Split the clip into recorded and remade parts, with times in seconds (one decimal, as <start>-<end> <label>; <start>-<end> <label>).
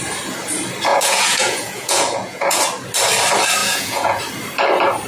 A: 0.0-0.9 recorded; 0.9-2.6 remade; 2.6-3.6 recorded; 3.6-4.2 remade; 4.2-5.1 recorded